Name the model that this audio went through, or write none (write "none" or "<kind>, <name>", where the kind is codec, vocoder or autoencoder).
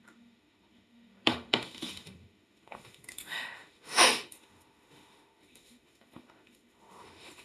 autoencoder, DAC-VAE